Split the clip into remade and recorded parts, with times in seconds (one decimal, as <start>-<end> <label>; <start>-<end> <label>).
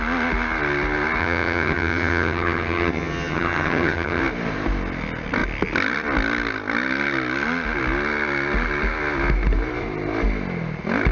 0.0-1.2 recorded; 1.2-4.2 remade; 4.2-11.1 recorded